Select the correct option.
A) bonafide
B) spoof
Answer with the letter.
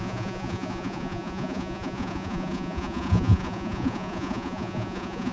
B